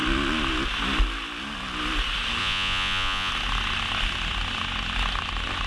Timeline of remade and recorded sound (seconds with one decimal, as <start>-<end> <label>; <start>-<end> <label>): 0.0-2.4 recorded; 2.4-3.3 remade; 3.3-5.7 recorded